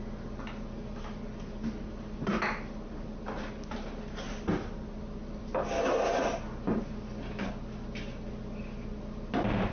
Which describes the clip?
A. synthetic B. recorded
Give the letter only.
B